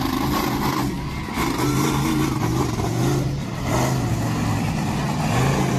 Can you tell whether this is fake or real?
real